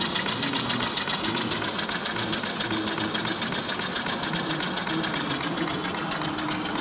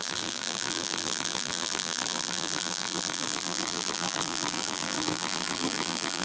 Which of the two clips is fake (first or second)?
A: second